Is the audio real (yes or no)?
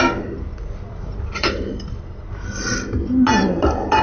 yes